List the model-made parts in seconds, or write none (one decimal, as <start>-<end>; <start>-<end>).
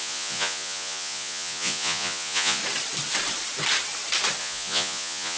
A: 0.0-2.6; 4.4-5.4